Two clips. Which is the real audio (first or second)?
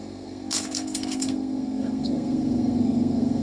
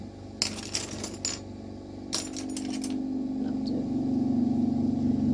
second